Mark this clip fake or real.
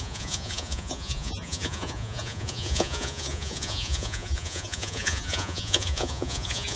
fake